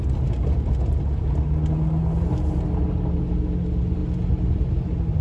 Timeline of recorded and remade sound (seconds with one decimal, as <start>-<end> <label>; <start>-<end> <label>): 0.0-5.2 recorded